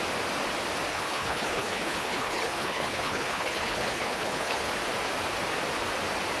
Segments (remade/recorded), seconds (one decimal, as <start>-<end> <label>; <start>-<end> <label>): 0.0-0.9 recorded; 0.9-4.7 remade; 4.7-6.4 recorded

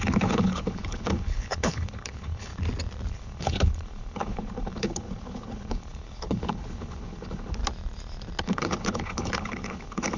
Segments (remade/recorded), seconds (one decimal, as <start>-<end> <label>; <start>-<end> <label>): 0.0-2.5 remade; 2.5-3.1 recorded; 3.1-7.6 remade; 7.6-8.4 recorded; 8.4-10.2 remade